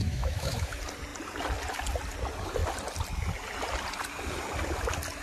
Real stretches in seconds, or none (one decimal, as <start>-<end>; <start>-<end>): 0.7-5.2

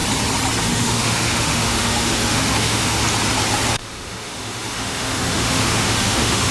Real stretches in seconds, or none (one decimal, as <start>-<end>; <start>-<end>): 0.0-0.6; 3.0-3.7

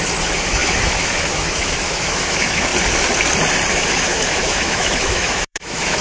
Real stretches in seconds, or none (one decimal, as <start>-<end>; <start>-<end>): 2.7-3.7

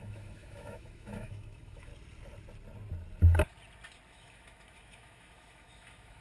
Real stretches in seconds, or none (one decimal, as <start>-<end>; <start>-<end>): 1.9-4.1

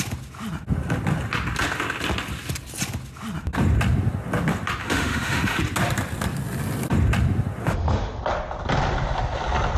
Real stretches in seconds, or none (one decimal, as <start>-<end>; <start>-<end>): 0.0-4.8; 5.6-7.6; 8.2-9.8